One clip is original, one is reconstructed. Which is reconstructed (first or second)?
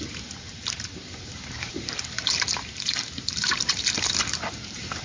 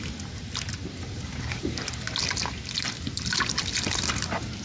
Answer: first